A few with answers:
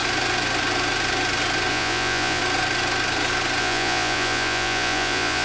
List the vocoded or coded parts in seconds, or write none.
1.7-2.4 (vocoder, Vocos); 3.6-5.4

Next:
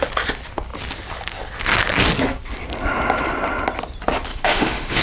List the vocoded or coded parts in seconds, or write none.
4.3-5.0 (autoencoder, DAC-VAE)